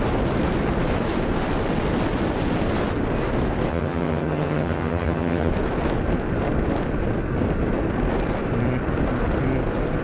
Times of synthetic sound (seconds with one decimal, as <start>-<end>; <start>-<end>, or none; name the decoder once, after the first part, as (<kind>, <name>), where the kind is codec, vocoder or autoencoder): 3.7-5.5 (vocoder, HiFi-GAN)